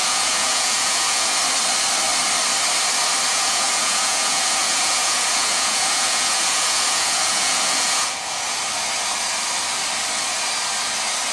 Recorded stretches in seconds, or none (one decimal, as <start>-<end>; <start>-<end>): 1.4-3.3; 8.6-11.3